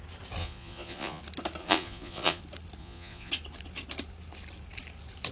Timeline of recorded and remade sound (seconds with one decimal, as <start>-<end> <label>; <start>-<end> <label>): 0.0-0.4 recorded; 0.4-1.2 remade; 1.2-1.6 recorded; 1.6-2.4 remade; 2.4-2.8 recorded; 2.8-3.3 remade; 3.3-5.3 recorded

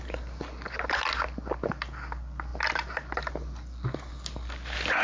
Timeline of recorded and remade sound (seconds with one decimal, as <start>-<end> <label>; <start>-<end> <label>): 0.0-5.0 recorded

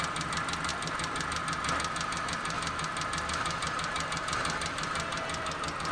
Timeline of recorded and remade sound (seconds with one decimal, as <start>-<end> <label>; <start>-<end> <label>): 0.0-5.9 recorded

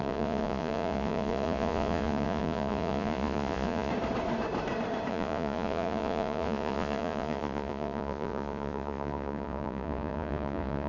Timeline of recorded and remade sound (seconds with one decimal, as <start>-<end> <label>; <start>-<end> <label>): 0.0-3.9 remade; 3.9-5.1 recorded; 5.1-10.9 remade